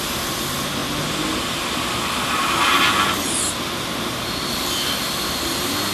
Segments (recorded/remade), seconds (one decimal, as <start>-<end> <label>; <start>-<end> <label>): 0.0-5.9 recorded